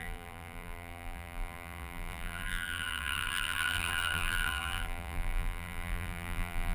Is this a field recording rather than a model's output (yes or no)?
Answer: no